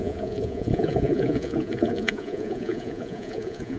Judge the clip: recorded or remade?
remade